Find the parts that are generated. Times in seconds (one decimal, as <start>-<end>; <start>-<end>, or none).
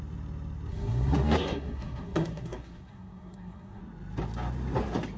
0.7-3.8